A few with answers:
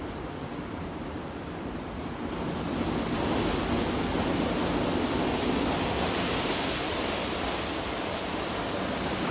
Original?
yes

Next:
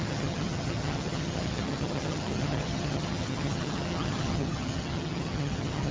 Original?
no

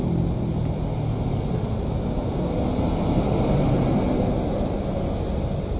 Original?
yes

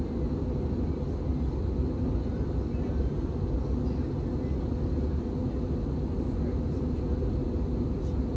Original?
yes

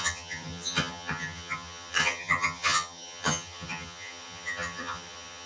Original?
no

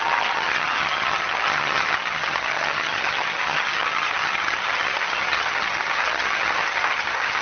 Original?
no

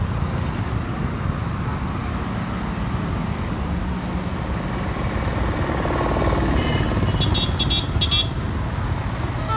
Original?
yes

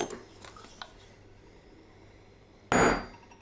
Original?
yes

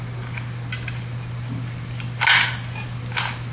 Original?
yes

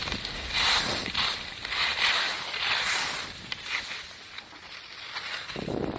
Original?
yes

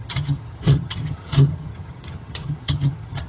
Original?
no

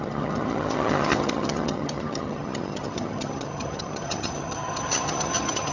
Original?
no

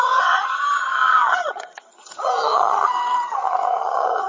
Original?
no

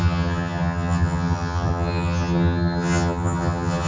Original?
no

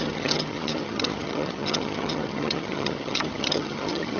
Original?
no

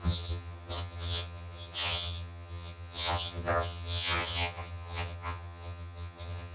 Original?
no